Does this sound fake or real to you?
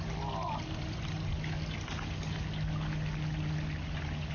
real